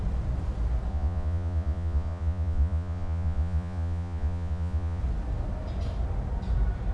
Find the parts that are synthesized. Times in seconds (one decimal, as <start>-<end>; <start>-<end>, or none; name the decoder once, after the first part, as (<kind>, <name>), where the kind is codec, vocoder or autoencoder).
0.9-5.0 (vocoder, Vocos)